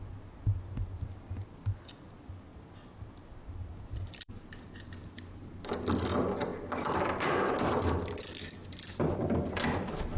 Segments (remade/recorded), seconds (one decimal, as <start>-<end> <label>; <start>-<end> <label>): 0.0-2.5 recorded; 2.5-5.1 remade; 5.1-6.5 recorded; 6.5-7.8 remade; 7.8-10.2 recorded